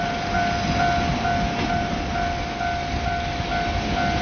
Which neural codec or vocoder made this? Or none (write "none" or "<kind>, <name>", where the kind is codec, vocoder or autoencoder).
none